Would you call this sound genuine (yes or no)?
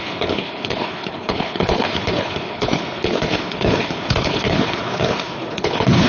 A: no